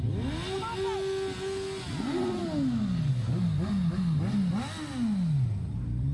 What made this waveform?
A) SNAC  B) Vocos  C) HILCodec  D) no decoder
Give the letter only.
D